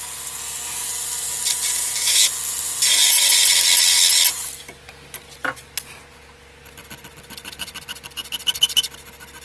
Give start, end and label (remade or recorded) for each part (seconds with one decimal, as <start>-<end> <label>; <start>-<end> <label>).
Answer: 0.0-9.4 recorded